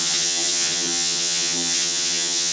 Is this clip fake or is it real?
fake